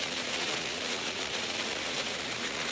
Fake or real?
fake